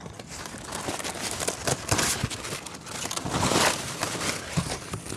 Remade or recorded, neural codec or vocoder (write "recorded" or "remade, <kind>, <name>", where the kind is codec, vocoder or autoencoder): recorded